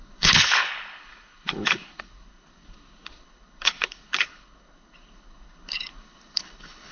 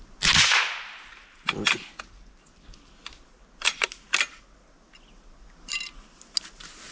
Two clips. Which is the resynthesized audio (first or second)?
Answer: first